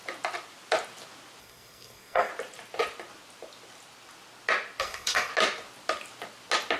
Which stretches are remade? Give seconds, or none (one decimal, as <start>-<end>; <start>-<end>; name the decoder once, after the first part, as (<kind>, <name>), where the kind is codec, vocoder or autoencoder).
1.4-2.3 (codec, SNAC); 4.8-5.3